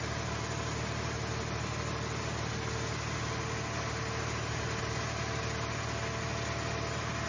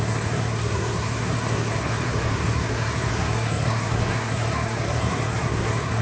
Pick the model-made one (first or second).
second